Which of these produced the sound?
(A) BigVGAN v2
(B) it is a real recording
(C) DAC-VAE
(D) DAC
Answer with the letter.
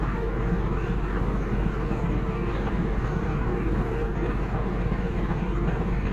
D